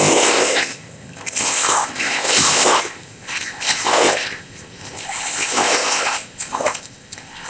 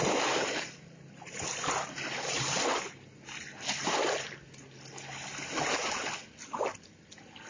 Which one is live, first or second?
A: second